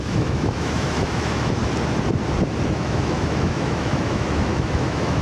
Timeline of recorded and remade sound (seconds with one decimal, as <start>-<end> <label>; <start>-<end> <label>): 0.0-1.6 remade; 1.6-2.7 recorded; 2.7-5.2 remade